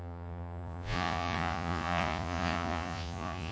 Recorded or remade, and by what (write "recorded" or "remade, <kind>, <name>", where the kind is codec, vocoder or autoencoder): remade, vocoder, Vocos